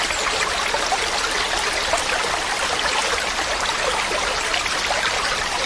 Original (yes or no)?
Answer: yes